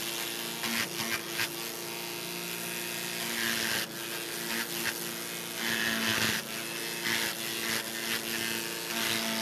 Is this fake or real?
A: real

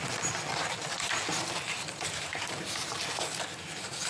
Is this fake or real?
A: fake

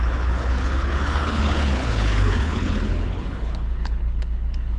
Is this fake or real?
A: fake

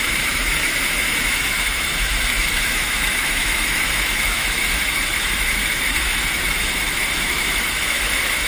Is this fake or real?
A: fake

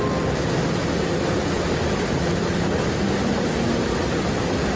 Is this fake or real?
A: real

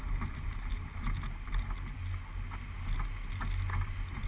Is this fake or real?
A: real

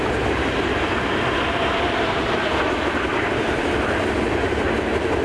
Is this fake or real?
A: real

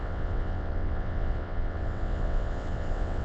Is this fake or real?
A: fake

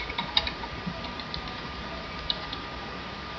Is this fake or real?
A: fake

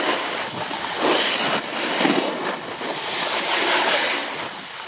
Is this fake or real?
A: real